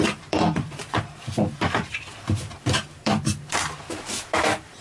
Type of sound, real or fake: fake